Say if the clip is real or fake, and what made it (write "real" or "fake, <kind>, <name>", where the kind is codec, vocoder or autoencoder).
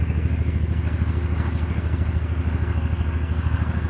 fake, codec, SNAC